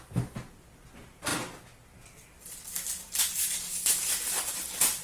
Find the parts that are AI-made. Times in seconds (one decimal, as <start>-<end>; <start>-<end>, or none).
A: none